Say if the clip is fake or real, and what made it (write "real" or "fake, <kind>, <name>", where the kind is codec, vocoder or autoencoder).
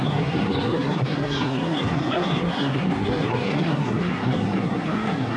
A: fake, codec, SNAC